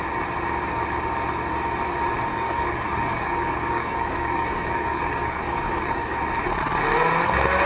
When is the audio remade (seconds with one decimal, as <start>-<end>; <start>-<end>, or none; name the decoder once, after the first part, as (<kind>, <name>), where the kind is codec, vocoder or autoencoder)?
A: 2.3-6.2 (codec, DAC)